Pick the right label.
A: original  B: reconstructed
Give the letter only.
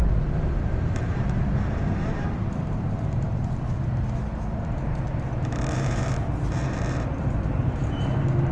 B